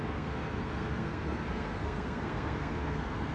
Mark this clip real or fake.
fake